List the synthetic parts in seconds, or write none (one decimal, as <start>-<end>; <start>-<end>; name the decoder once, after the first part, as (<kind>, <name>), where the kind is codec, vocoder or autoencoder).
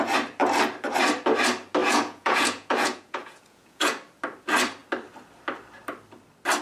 1.8-3.9 (vocoder, Vocos)